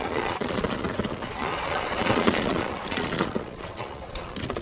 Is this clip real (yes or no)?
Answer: no